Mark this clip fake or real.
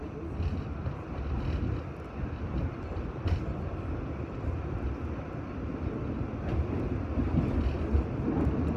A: real